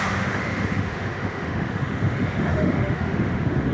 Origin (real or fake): fake